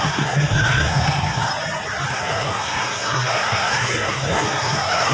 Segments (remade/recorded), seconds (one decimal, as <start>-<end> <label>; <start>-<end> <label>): 0.0-1.5 remade; 1.5-2.1 recorded; 2.1-5.1 remade